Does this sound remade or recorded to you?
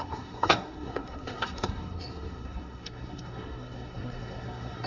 remade